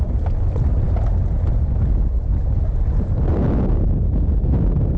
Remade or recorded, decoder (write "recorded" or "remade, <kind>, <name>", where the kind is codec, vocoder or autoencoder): recorded